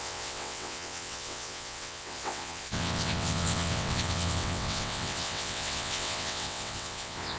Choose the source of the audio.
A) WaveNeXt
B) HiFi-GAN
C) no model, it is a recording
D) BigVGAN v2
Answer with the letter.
A